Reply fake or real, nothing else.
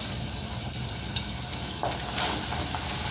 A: real